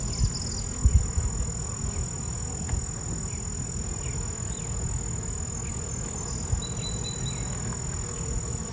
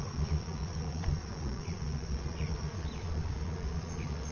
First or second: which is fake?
second